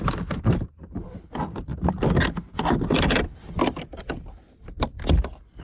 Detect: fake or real real